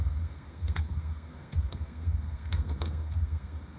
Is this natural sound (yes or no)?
no